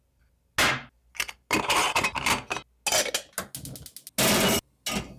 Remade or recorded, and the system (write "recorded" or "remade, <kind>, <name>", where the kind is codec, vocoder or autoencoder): recorded